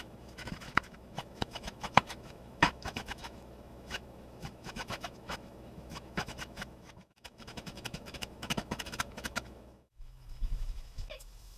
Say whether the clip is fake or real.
fake